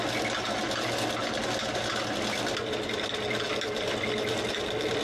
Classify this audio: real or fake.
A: real